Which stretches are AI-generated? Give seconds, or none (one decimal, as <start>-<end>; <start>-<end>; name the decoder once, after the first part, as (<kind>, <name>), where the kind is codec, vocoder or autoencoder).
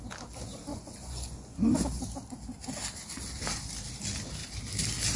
0.7-1.5 (vocoder, Vocos)